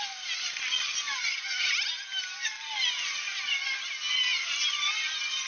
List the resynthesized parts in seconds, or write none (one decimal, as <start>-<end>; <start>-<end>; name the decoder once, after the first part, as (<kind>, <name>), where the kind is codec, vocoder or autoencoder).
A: none